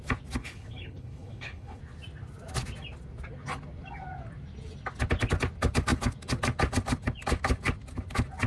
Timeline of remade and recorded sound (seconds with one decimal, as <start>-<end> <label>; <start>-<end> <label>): 0.0-0.4 recorded; 0.4-1.8 remade; 1.8-8.5 recorded